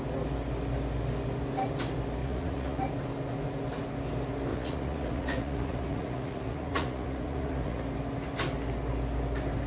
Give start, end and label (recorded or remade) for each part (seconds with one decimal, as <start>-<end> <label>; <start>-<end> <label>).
0.0-2.2 recorded; 2.2-2.8 remade; 2.8-4.5 recorded; 4.5-7.8 remade; 7.8-9.7 recorded